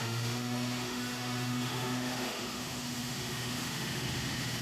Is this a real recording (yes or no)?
no